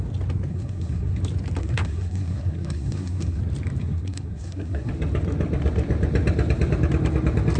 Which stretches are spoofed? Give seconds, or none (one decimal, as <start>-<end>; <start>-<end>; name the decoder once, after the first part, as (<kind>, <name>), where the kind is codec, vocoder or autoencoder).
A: 0.5-1.2 (codec, SNAC); 1.6-3.4; 3.8-4.9